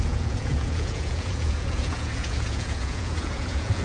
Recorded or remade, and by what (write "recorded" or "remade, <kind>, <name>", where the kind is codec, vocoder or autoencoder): remade, vocoder, Vocos